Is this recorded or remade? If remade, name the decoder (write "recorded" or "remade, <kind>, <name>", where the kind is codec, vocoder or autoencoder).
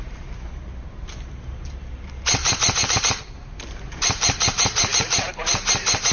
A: remade, vocoder, BigVGAN v2